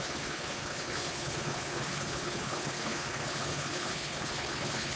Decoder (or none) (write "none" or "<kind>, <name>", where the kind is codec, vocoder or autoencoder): codec, HILCodec